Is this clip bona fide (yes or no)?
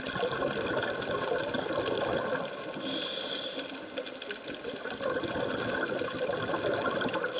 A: yes